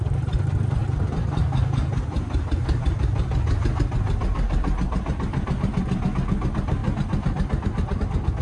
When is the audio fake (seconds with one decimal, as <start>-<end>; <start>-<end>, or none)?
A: 0.8-1.4